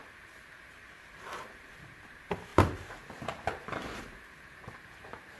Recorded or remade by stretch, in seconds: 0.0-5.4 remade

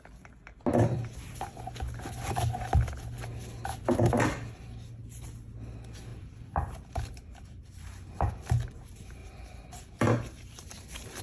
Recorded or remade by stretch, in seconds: 0.0-6.1 recorded; 6.1-8.3 remade; 8.3-9.2 recorded; 9.2-11.2 remade

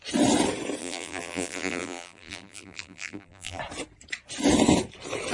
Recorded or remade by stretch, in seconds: 0.0-0.8 recorded; 0.8-3.6 remade; 3.6-5.3 recorded